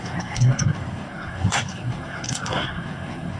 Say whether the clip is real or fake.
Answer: fake